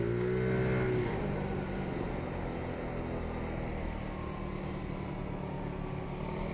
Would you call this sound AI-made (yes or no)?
no